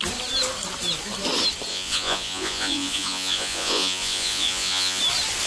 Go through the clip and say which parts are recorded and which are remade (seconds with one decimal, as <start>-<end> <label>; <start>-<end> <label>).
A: 0.0-1.7 recorded; 1.7-5.0 remade; 5.0-5.5 recorded